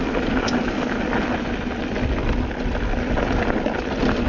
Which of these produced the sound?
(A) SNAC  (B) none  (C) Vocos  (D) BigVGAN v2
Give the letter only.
B